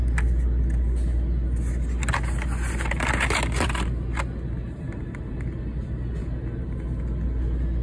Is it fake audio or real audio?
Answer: real